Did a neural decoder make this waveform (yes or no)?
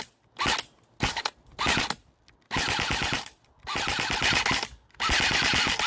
no